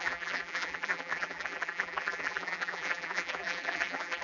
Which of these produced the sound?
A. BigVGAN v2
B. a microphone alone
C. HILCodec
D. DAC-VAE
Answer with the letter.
A